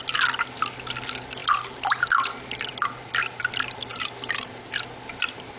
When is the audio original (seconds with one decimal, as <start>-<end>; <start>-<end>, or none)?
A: 0.0-3.9; 4.7-5.6